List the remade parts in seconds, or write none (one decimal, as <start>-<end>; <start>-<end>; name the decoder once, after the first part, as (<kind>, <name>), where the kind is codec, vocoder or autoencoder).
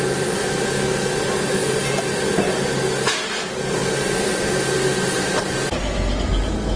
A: none